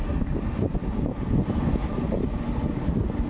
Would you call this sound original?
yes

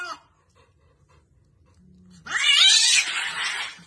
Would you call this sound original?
yes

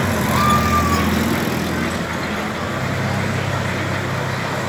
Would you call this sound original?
yes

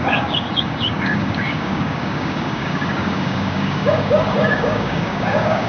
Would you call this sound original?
no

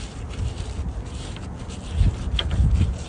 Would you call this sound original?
yes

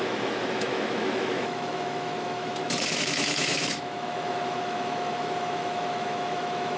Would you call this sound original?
no